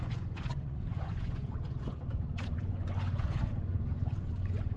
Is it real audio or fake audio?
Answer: fake